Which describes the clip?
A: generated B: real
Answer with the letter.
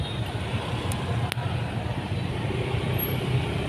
B